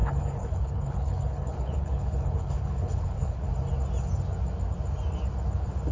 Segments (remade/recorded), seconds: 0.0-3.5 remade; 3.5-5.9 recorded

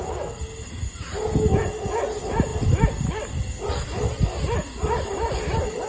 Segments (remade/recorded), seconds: 0.0-5.9 recorded

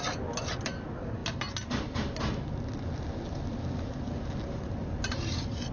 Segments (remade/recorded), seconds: 0.0-5.7 recorded

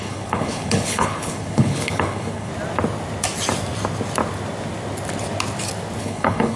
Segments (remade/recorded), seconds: 0.0-2.5 remade; 2.5-6.0 recorded; 6.0-6.6 remade

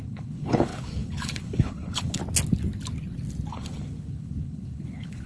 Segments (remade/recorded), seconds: 0.0-2.2 remade; 2.2-3.5 recorded; 3.5-5.3 remade